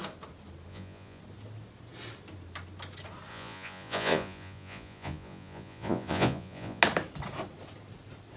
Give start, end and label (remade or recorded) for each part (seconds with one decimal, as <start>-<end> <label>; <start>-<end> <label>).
0.0-0.7 recorded; 0.7-1.2 remade; 1.2-3.3 recorded; 3.3-6.8 remade; 6.8-8.4 recorded